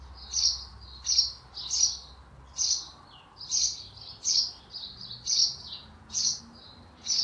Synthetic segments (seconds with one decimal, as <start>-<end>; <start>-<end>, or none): 5.4-6.4